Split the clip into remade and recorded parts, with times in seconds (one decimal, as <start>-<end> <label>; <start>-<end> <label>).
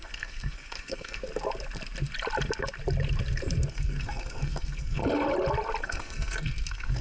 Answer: 0.0-1.2 remade; 1.2-3.7 recorded; 3.7-5.0 remade; 5.0-5.8 recorded; 5.8-7.0 remade